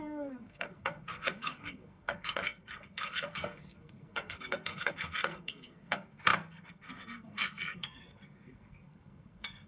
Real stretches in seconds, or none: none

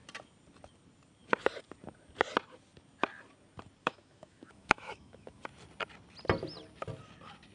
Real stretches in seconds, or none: 0.0-3.8; 5.4-7.5